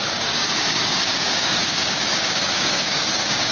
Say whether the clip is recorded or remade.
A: remade